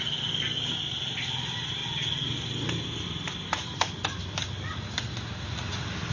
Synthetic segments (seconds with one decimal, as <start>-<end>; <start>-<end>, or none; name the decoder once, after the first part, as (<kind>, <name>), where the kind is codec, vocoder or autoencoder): none